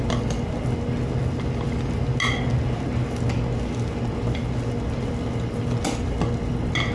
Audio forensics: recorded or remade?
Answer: recorded